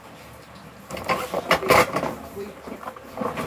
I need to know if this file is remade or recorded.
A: recorded